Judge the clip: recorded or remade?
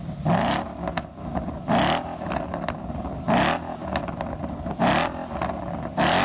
recorded